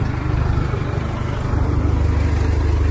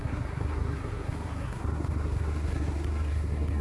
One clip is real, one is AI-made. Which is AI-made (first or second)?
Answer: second